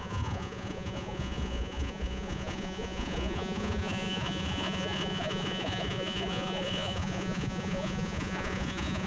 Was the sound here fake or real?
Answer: fake